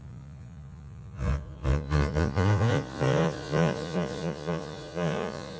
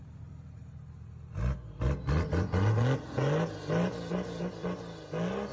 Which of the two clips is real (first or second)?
second